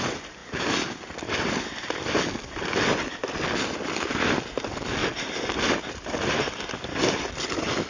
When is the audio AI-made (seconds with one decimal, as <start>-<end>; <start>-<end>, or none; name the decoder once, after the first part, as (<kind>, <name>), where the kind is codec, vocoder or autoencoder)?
none